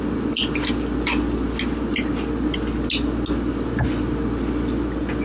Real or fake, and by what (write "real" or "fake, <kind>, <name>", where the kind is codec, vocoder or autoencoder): real